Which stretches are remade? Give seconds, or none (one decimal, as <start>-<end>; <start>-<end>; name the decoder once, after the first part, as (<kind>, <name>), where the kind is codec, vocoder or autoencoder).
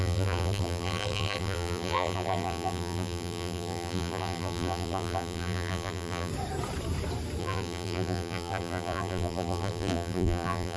0.0-6.3 (vocoder, BigVGAN v2); 7.4-10.8